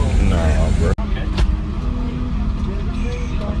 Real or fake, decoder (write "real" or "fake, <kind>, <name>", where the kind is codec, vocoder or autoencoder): real